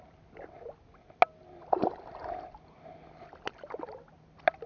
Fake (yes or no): no